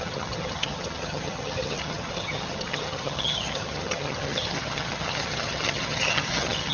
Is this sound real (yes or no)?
no